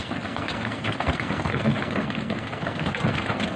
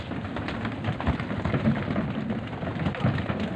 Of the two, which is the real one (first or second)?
second